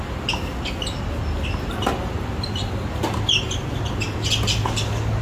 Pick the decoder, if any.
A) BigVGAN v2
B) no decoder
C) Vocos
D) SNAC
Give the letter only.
B